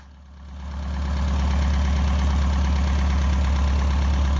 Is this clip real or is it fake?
real